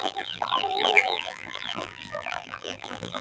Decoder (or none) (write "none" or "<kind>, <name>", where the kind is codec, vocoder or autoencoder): vocoder, BigVGAN v2